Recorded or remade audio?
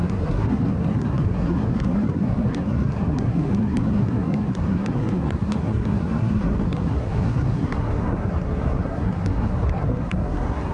remade